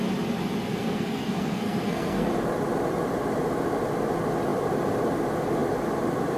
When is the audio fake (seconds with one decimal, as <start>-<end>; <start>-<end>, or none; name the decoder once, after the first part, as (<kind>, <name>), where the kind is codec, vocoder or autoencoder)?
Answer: 0.7-2.3 (codec, SNAC)